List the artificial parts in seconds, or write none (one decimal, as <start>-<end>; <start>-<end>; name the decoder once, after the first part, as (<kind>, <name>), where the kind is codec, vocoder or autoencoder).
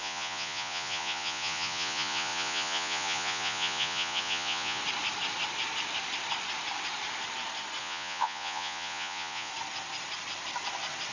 0.0-4.8 (vocoder, Vocos); 7.8-9.5